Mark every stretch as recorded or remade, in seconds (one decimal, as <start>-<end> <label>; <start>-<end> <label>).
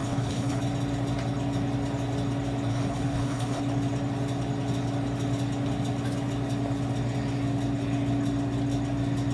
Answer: 0.0-0.6 remade; 0.6-2.7 recorded; 2.7-3.6 remade; 3.6-9.3 recorded